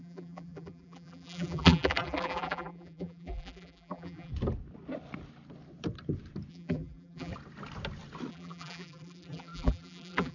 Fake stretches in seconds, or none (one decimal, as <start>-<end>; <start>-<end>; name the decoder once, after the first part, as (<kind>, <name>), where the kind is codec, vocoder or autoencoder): 0.0-4.3 (vocoder, BigVGAN v2); 6.5-7.3; 8.3-10.3